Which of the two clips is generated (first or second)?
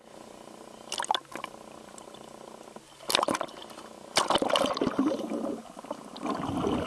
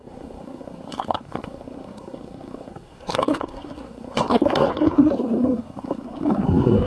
second